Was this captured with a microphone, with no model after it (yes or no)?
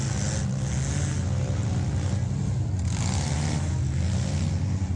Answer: yes